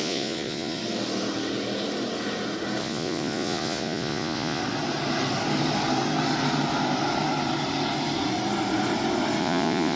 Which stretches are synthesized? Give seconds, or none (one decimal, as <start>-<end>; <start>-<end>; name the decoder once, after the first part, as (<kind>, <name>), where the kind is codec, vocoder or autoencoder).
0.0-0.8 (vocoder, Vocos); 2.8-4.6; 9.4-10.0